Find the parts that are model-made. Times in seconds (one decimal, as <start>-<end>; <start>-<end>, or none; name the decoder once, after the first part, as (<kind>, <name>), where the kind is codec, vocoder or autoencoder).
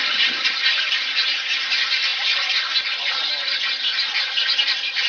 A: none